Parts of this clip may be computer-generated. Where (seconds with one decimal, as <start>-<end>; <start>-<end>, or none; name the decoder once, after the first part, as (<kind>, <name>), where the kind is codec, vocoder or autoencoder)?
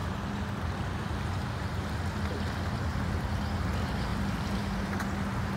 none